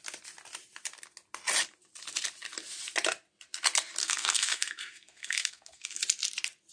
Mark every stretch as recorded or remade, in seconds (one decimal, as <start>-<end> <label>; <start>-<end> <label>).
0.0-4.0 recorded; 4.0-6.0 remade; 6.0-6.7 recorded